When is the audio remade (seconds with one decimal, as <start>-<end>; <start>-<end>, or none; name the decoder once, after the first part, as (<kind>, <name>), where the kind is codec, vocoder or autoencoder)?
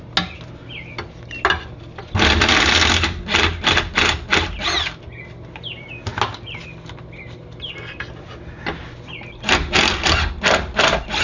none